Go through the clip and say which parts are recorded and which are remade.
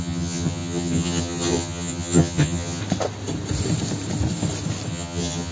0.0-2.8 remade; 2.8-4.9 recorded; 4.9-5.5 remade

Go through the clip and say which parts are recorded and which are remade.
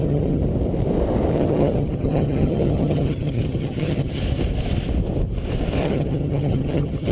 0.0-0.4 remade; 0.4-1.3 recorded; 1.3-4.2 remade; 4.2-5.8 recorded; 5.8-7.1 remade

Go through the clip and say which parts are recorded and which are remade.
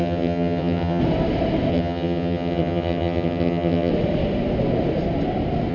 0.0-1.0 remade; 1.0-1.7 recorded; 1.7-3.9 remade; 3.9-5.7 recorded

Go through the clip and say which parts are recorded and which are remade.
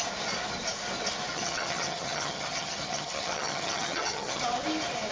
0.0-1.3 recorded; 1.3-4.4 remade; 4.4-5.1 recorded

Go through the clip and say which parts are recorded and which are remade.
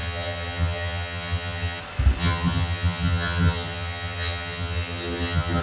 0.0-1.8 remade; 1.8-2.2 recorded; 2.2-5.6 remade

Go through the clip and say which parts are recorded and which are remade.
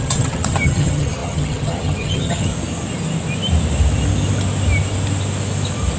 0.0-2.5 remade; 2.5-6.0 recorded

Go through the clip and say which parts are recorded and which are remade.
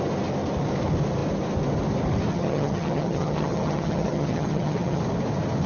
0.0-2.3 recorded; 2.3-5.0 remade; 5.0-5.7 recorded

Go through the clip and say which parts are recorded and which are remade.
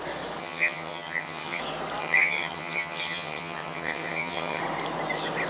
0.0-0.4 recorded; 0.4-1.6 remade; 1.6-2.0 recorded; 2.0-4.6 remade; 4.6-5.5 recorded